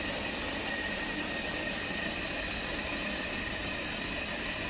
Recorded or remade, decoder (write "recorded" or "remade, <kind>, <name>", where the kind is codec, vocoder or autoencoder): recorded